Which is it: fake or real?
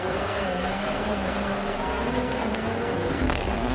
fake